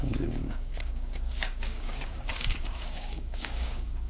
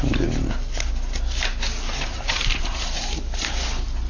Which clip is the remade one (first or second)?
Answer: first